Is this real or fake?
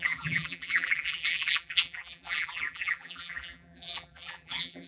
fake